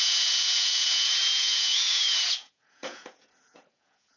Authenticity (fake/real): fake